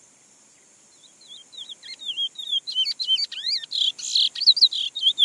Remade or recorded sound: recorded